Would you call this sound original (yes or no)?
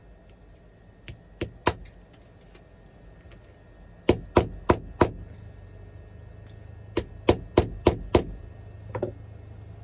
yes